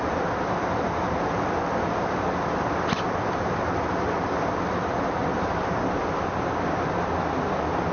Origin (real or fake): real